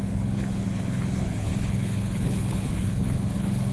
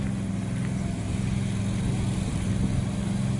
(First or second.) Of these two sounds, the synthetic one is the first